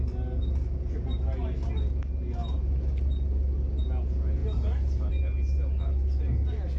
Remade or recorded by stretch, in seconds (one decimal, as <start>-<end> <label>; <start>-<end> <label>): 0.0-6.8 recorded